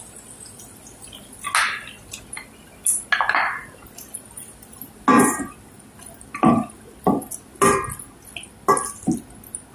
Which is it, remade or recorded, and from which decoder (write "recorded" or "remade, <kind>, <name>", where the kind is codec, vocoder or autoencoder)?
recorded